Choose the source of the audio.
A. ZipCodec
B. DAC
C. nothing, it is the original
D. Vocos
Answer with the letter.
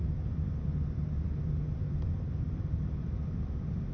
C